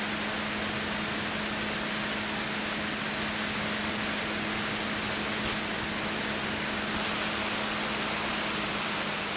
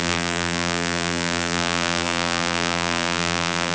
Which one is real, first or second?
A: first